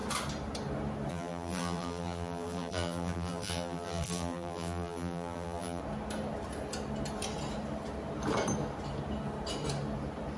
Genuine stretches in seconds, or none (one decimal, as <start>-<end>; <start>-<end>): 0.0-1.1; 5.8-10.4